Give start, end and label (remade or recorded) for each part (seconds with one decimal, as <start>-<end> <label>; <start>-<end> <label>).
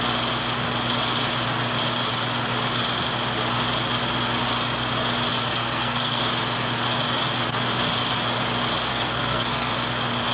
0.0-5.3 recorded; 5.3-6.2 remade; 6.2-8.9 recorded; 8.9-9.7 remade; 9.7-10.3 recorded